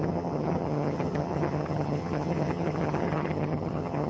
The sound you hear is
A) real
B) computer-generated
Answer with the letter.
B